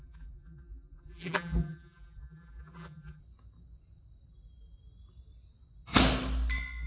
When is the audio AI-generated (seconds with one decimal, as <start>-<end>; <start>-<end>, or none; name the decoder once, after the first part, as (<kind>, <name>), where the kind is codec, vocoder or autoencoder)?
0.0-3.2 (vocoder, BigVGAN v2)